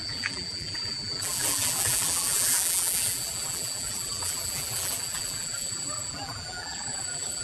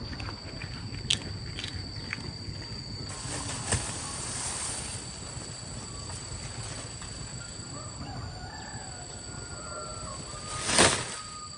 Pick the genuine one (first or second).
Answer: second